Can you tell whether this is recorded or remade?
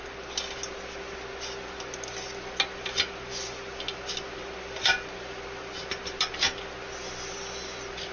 recorded